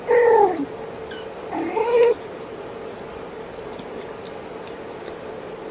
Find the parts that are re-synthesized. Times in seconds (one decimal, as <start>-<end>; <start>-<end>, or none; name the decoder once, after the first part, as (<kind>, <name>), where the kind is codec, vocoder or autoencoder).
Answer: none